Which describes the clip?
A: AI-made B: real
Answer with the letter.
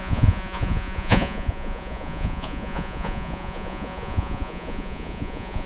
A